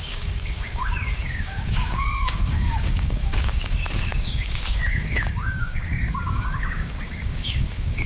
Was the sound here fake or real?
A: fake